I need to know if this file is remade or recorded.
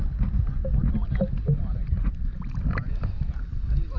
recorded